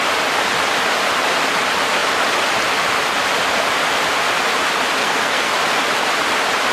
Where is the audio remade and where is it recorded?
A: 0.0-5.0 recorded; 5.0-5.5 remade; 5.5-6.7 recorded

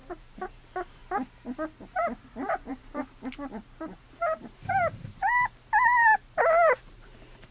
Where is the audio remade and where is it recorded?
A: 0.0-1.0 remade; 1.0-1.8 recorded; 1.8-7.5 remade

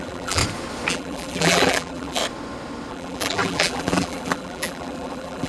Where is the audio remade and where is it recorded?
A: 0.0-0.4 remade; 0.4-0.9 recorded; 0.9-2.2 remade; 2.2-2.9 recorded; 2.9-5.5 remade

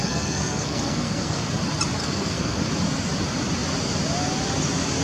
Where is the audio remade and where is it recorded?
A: 0.0-1.5 remade; 1.5-2.0 recorded; 2.0-2.7 remade; 2.7-5.0 recorded

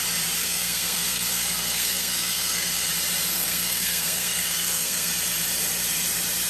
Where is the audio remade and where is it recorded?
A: 0.0-0.4 recorded; 0.4-2.9 remade; 2.9-3.3 recorded; 3.3-5.1 remade; 5.1-6.5 recorded

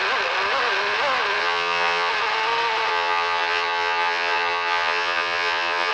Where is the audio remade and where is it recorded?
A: 0.0-1.4 recorded; 1.4-2.1 remade; 2.1-2.9 recorded; 2.9-5.9 remade

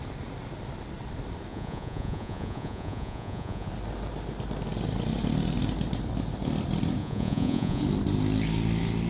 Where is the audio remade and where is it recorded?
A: 0.0-1.5 recorded; 1.5-3.7 remade; 3.7-7.0 recorded; 7.0-7.8 remade; 7.8-9.1 recorded

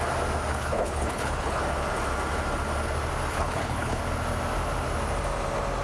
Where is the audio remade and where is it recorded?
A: 0.0-0.5 recorded; 0.5-1.6 remade; 1.6-3.3 recorded; 3.3-4.0 remade; 4.0-5.8 recorded